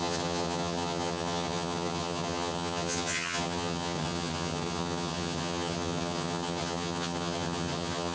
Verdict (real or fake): fake